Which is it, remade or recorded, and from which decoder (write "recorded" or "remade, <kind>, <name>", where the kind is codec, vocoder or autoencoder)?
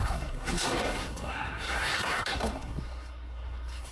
remade, codec, SNAC